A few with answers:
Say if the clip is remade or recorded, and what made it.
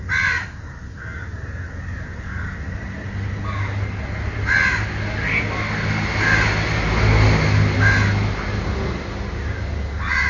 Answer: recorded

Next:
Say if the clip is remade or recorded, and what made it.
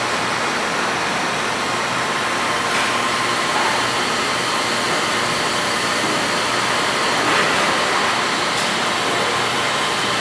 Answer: recorded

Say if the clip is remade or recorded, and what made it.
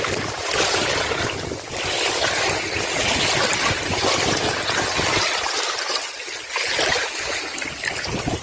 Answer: recorded